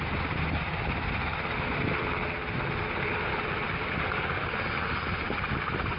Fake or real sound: real